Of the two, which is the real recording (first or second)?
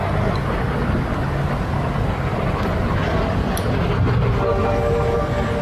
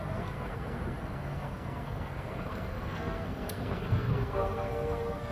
first